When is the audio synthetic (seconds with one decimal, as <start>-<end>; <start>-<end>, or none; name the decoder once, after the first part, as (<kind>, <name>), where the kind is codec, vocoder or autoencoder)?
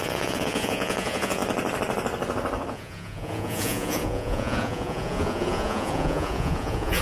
0.0-1.4 (vocoder, Vocos); 2.7-7.0